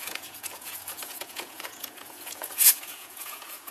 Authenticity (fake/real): fake